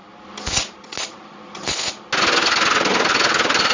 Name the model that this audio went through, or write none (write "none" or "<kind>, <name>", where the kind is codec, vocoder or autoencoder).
none